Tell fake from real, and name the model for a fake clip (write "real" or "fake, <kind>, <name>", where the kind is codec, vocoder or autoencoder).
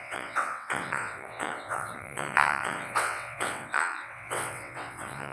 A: fake, vocoder, WaveNeXt